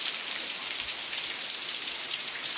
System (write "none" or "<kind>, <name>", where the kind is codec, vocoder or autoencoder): none